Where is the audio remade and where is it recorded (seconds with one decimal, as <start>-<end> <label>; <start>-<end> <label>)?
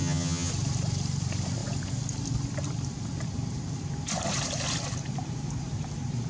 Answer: 0.0-0.5 remade; 0.5-6.3 recorded